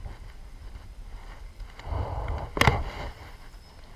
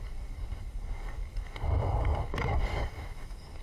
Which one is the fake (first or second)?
second